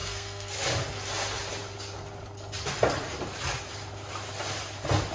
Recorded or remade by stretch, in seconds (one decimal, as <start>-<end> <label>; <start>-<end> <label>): 0.0-0.5 remade; 0.5-5.1 recorded